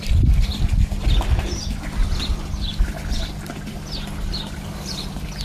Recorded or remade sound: recorded